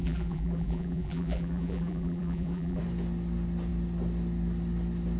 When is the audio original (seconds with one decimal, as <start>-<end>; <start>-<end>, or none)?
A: 2.8-5.2